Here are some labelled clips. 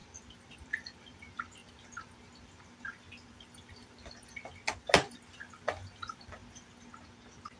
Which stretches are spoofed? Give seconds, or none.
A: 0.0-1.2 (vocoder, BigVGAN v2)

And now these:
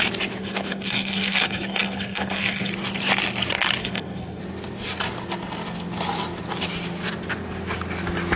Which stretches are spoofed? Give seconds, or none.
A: 0.4-2.7 (codec, SNAC); 3.8-4.4